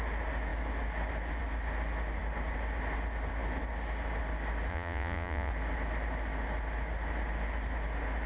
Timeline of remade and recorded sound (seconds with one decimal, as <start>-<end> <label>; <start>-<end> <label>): 0.0-4.7 recorded; 4.7-5.5 remade; 5.5-8.3 recorded